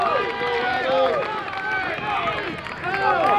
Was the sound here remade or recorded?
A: recorded